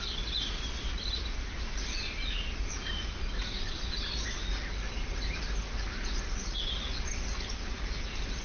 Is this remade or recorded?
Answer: recorded